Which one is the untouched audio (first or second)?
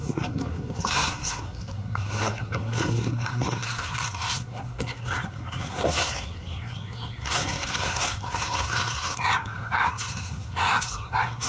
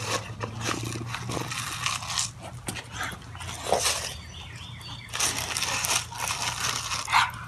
second